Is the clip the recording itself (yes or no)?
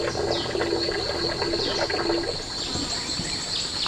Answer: yes